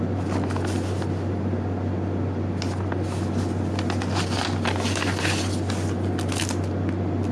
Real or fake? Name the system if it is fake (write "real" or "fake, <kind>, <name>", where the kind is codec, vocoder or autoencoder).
real